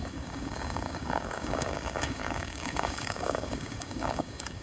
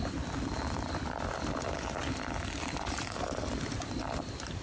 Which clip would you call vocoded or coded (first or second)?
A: first